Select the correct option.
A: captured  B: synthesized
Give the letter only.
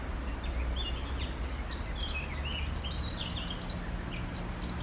A